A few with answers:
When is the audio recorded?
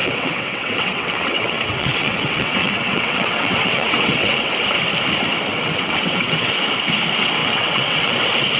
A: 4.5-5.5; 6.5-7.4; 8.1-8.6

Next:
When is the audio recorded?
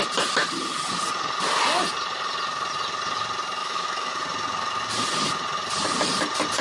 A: 0.0-3.6; 4.2-6.6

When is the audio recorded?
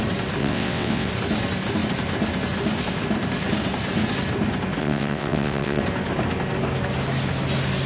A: 0.0-0.4; 1.1-4.8; 5.8-7.9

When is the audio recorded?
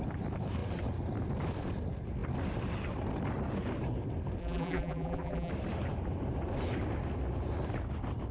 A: 0.0-4.4; 5.5-8.3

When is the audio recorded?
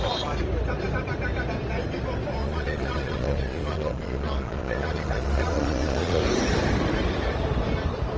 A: 0.0-2.4; 6.2-8.2